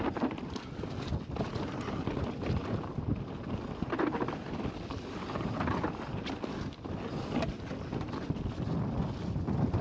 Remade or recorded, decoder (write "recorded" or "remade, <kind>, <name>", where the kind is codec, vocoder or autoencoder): recorded